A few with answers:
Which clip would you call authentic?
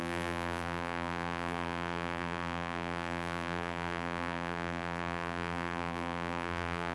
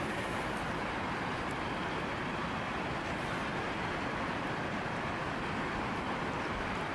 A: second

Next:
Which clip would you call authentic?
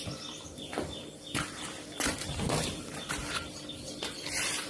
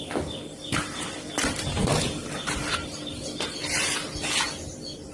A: second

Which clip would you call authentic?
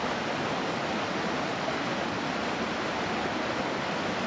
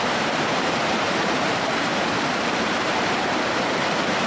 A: first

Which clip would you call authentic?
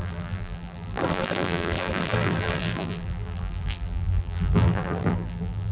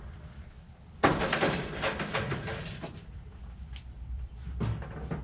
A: second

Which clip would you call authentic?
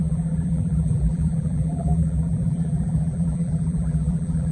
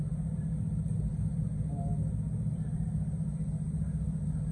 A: second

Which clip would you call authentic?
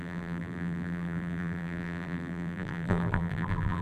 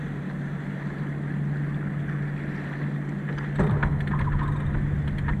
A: second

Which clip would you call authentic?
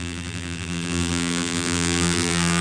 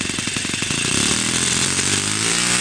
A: second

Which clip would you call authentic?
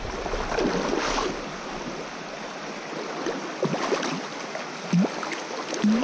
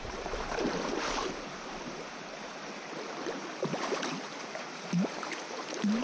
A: first